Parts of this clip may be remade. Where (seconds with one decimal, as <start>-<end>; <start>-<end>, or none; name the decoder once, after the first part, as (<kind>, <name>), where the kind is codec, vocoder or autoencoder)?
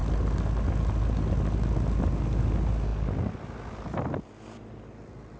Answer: none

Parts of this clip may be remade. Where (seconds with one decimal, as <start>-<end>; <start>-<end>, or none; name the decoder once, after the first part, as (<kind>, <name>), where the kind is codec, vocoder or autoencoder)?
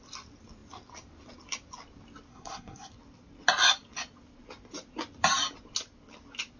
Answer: 2.3-2.9 (codec, SNAC)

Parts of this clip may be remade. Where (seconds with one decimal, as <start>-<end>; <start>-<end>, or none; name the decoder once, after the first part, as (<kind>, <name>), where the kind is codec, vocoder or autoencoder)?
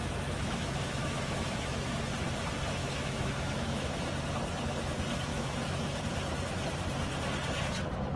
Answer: 0.0-1.9 (autoencoder, DAC-VAE); 2.8-4.0; 5.3-6.0